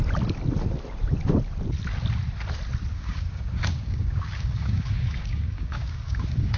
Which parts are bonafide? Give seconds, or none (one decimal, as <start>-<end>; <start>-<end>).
0.0-2.9